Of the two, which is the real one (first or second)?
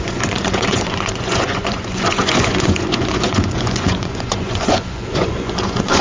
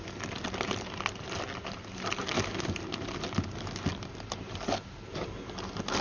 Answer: second